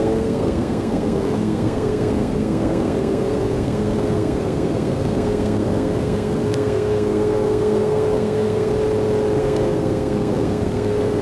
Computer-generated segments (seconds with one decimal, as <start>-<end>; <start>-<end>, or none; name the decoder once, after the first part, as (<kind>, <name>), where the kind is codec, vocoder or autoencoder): 0.0-8.7 (codec, SNAC); 9.4-11.2